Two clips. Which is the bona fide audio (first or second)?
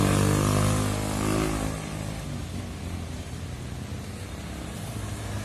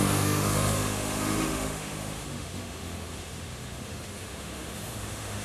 first